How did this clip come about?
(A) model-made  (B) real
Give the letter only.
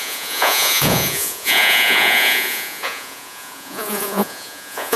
A